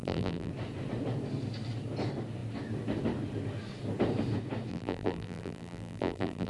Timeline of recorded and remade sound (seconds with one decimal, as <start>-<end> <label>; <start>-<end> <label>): 0.0-0.5 remade; 0.5-4.7 recorded; 4.7-6.5 remade